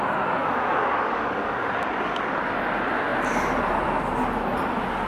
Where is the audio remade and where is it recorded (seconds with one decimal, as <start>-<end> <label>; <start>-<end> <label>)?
0.0-0.4 recorded; 0.4-2.3 remade; 2.3-5.1 recorded